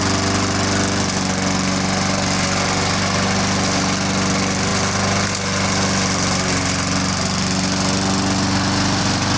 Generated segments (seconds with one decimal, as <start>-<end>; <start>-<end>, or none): none